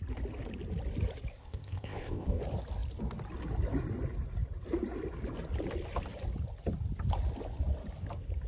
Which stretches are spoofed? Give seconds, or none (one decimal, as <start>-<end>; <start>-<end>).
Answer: 1.3-2.4